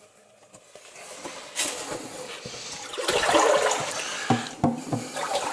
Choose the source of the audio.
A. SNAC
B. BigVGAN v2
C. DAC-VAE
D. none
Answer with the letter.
D